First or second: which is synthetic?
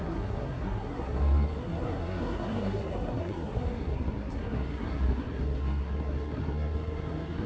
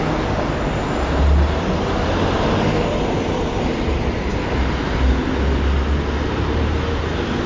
first